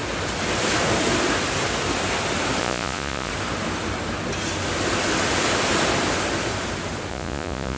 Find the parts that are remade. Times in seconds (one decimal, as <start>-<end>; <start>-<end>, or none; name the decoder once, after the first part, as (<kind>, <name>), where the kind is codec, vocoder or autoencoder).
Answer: 2.6-3.3 (vocoder, Vocos); 7.1-7.8